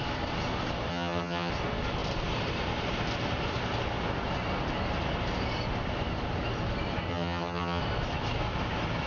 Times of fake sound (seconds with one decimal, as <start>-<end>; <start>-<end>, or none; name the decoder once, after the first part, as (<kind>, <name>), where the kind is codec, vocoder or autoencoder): 0.9-1.5 (vocoder, HiFi-GAN); 7.1-7.8